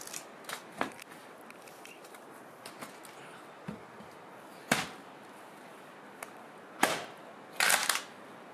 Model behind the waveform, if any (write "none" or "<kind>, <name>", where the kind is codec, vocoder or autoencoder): none